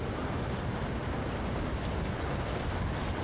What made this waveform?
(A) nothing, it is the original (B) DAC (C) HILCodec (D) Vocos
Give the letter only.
A